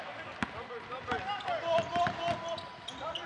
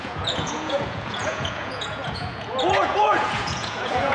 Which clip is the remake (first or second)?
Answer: second